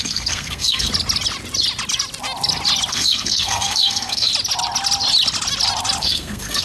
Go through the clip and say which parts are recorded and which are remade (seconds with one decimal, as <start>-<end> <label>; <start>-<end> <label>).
0.0-0.9 remade; 0.9-2.9 recorded; 2.9-4.3 remade; 4.3-6.0 recorded; 6.0-6.6 remade